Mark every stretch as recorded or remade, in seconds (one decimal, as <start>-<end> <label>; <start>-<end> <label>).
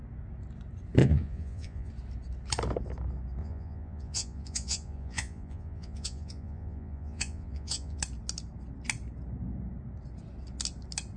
0.0-1.0 recorded; 1.0-1.9 remade; 1.9-3.4 recorded; 3.4-8.0 remade; 8.0-11.2 recorded